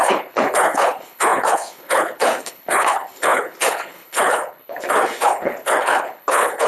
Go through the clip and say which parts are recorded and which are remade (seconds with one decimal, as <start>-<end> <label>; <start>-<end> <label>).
0.0-6.7 remade